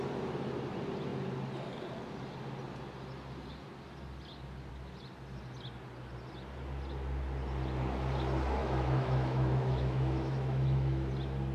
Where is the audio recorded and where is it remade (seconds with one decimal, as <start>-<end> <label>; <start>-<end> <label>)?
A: 0.0-8.6 recorded; 8.6-11.1 remade; 11.1-11.5 recorded